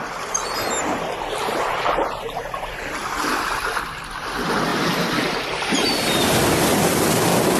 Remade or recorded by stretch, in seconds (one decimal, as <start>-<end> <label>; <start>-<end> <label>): 0.0-0.8 recorded; 0.8-2.7 remade; 2.7-4.7 recorded; 4.7-5.9 remade; 5.9-7.6 recorded